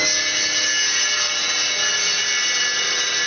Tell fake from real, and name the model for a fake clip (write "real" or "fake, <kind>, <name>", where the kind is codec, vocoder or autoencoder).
real